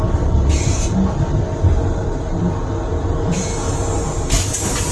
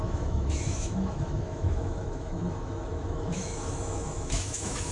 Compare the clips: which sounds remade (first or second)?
second